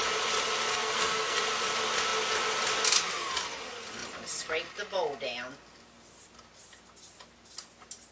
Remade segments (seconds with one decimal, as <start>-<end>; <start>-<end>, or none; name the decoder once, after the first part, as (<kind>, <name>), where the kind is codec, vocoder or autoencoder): 0.7-1.4 (codec, SNAC)